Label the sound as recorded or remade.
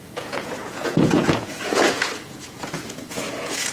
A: remade